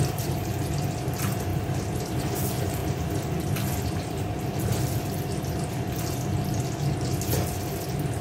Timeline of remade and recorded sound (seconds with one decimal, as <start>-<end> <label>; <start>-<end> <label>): 0.0-8.2 recorded